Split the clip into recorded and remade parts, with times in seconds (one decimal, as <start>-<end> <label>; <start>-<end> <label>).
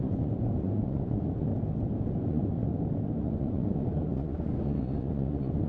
0.0-1.5 remade; 1.5-2.2 recorded; 2.2-2.7 remade; 2.7-3.2 recorded; 3.2-5.7 remade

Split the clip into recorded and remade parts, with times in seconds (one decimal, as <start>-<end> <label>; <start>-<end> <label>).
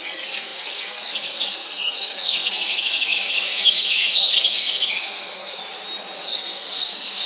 0.0-5.6 remade; 5.6-6.2 recorded; 6.2-7.3 remade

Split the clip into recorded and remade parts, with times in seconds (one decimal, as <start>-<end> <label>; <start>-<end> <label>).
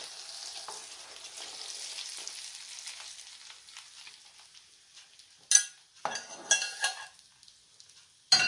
0.0-8.5 recorded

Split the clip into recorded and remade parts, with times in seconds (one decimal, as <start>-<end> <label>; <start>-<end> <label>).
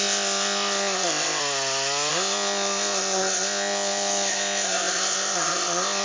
0.0-1.4 remade; 1.4-2.1 recorded; 2.1-6.0 remade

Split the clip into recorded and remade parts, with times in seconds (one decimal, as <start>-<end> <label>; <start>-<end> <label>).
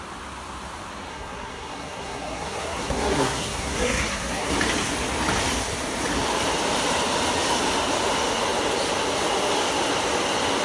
0.0-1.1 recorded; 1.1-4.5 remade; 4.5-10.6 recorded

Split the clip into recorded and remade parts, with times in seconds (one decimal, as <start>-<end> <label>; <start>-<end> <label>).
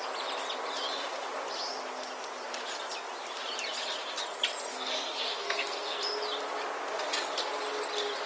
0.0-4.7 recorded; 4.7-6.0 remade; 6.0-8.3 recorded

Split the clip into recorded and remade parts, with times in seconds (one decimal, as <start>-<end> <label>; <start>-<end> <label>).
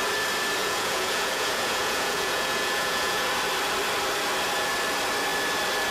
0.0-0.6 recorded; 0.6-3.3 remade; 3.3-5.9 recorded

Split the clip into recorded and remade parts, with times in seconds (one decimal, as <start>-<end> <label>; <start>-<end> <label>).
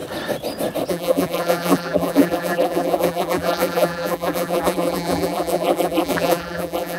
0.0-0.9 recorded; 0.9-7.0 remade